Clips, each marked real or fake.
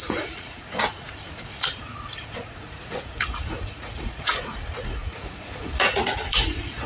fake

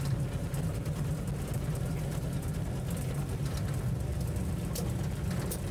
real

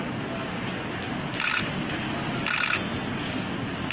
real